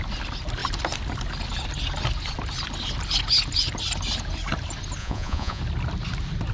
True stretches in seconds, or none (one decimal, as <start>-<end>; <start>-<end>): 0.0-5.0; 5.6-6.5